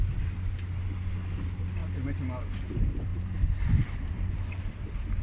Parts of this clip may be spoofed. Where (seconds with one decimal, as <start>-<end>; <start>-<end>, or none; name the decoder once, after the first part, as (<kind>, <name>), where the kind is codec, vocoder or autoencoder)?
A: none